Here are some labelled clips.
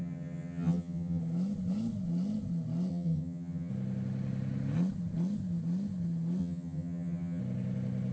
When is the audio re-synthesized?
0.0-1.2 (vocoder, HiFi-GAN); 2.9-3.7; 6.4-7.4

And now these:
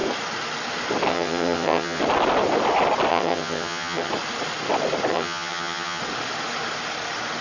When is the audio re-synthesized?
1.1-2.0 (vocoder, HiFi-GAN); 3.1-4.1; 5.1-6.0

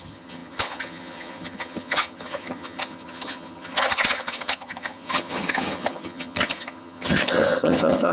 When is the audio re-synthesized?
0.0-8.1 (vocoder, HiFi-GAN)

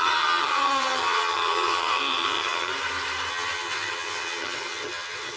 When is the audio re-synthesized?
0.0-2.7 (vocoder, HiFi-GAN); 3.3-5.4

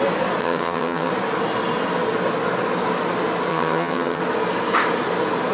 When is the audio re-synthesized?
0.4-1.1 (vocoder, HiFi-GAN); 3.5-4.2

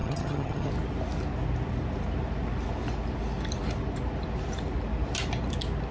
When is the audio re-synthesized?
0.0-0.7 (vocoder, HiFi-GAN)

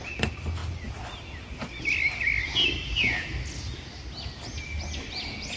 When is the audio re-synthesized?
none